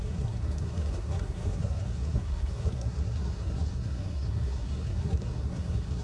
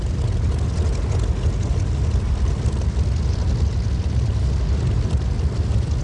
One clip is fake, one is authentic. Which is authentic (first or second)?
second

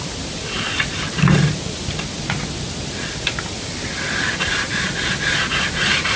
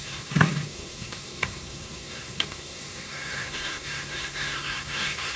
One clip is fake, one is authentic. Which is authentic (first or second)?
first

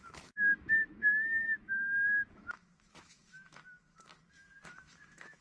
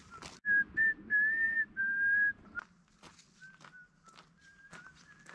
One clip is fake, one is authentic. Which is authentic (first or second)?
second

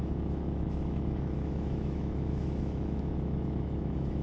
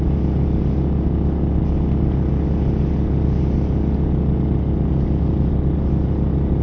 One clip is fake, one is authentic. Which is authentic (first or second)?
second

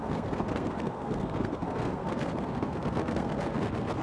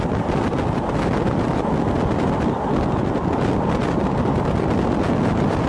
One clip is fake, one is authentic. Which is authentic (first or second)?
second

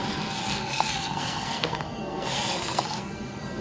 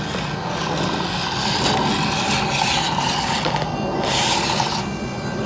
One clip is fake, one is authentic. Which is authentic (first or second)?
second